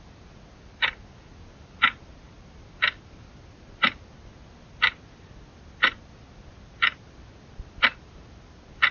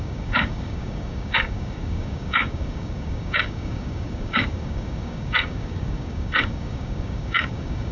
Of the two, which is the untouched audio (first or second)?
first